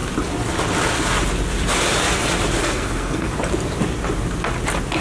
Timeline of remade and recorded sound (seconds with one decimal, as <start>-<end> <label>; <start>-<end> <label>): 0.0-2.6 recorded; 2.6-3.3 remade; 3.3-5.0 recorded

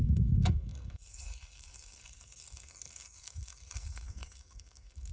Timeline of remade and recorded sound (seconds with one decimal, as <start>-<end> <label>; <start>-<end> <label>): 0.0-5.1 remade

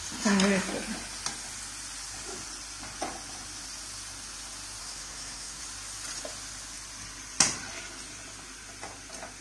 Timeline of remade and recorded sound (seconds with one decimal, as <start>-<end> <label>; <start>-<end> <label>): 0.0-4.8 recorded; 4.8-5.6 remade; 5.6-9.4 recorded

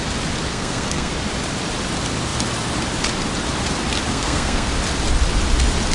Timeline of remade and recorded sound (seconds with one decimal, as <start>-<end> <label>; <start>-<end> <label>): 0.0-0.5 recorded; 0.5-1.1 remade; 1.1-4.1 recorded; 4.1-4.7 remade; 4.7-5.9 recorded

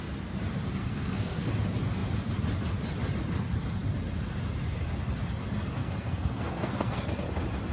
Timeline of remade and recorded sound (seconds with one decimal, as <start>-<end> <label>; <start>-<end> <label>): 0.0-0.8 recorded; 0.8-1.5 remade; 1.5-5.8 recorded; 5.8-7.1 remade; 7.1-7.7 recorded

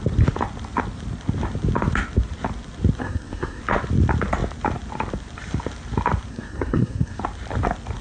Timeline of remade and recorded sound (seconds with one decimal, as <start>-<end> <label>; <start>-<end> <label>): 0.0-3.0 recorded; 3.0-3.6 remade; 3.6-6.3 recorded; 6.3-7.2 remade; 7.2-8.0 recorded